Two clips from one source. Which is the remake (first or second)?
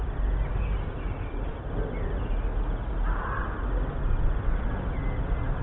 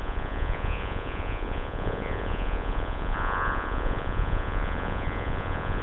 second